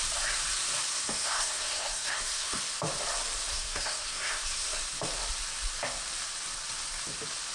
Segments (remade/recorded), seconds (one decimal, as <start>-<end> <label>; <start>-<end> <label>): 0.0-0.9 recorded; 0.9-2.6 remade; 2.6-3.5 recorded; 3.5-4.8 remade; 4.8-7.5 recorded